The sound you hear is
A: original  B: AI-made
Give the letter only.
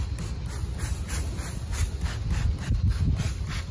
A